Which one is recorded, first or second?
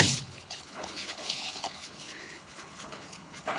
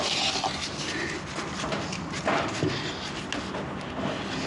second